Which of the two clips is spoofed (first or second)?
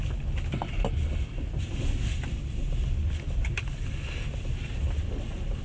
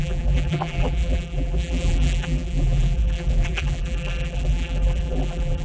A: second